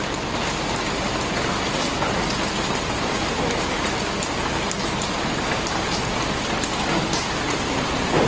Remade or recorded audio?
recorded